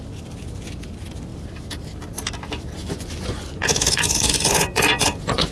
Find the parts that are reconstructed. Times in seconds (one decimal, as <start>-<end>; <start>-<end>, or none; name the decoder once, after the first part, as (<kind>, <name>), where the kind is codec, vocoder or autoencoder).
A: 2.8-5.5 (vocoder, Vocos)